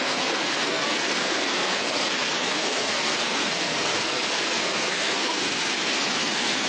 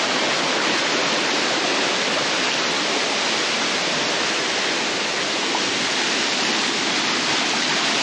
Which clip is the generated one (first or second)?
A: first